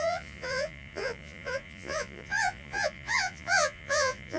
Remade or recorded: remade